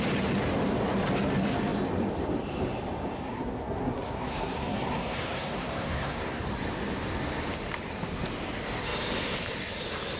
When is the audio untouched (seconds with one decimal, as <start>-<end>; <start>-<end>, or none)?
0.0-3.2; 6.4-10.2